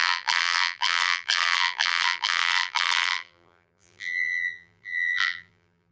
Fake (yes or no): yes